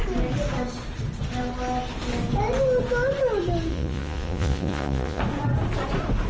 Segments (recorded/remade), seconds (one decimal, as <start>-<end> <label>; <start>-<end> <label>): 0.0-3.7 recorded; 3.7-5.2 remade; 5.2-6.3 recorded